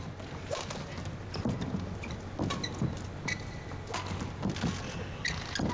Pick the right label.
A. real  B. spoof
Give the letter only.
A